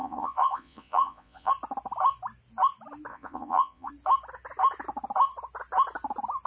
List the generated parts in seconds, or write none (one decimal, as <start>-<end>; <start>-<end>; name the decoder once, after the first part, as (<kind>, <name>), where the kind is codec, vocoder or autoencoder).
0.0-1.5 (vocoder, Vocos); 3.1-3.9